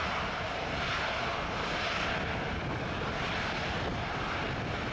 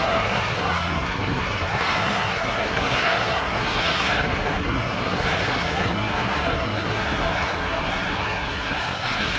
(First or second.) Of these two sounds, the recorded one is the first